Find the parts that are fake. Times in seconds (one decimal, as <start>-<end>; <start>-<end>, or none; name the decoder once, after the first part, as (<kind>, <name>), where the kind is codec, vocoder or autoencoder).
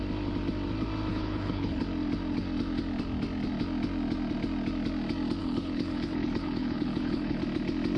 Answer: 1.1-1.8 (codec, HILCodec); 5.4-7.4